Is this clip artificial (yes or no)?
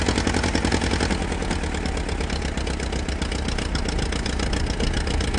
no